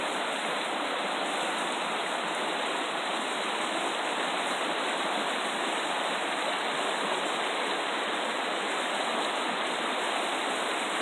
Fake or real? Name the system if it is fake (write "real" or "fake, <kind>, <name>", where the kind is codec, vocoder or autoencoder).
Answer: real